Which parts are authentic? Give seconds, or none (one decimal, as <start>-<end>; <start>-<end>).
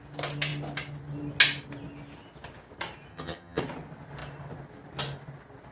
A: 0.0-3.1; 3.6-5.7